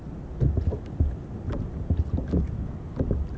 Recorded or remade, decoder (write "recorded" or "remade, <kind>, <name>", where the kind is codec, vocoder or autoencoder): recorded